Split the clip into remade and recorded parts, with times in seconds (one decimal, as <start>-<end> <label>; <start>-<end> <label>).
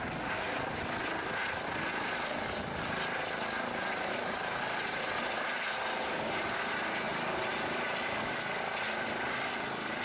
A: 0.0-10.0 recorded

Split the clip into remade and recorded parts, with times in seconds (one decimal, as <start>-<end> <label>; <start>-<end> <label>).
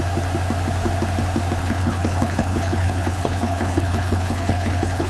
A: 0.0-1.6 recorded; 1.6-5.1 remade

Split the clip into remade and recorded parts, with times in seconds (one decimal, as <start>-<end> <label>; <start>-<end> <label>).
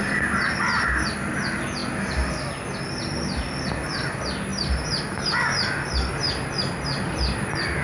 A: 0.0-7.8 recorded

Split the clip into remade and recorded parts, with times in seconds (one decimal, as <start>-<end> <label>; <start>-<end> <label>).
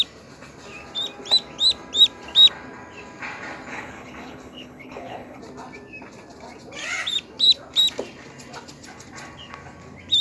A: 0.0-3.7 recorded; 3.7-5.4 remade; 5.4-10.2 recorded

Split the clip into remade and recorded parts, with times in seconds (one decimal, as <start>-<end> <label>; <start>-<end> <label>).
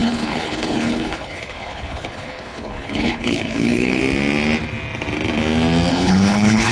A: 0.0-4.0 remade; 4.0-5.9 recorded; 5.9-6.7 remade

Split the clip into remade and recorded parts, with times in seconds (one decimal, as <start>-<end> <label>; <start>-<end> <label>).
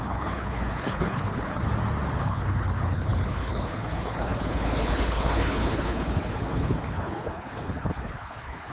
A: 0.0-1.6 remade; 1.6-2.2 recorded; 2.2-8.7 remade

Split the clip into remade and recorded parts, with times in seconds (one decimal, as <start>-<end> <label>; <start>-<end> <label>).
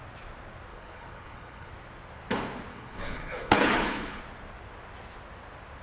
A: 0.0-0.7 recorded; 0.7-1.7 remade; 1.7-2.7 recorded; 2.7-4.2 remade; 4.2-5.8 recorded